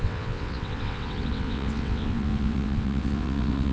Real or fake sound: fake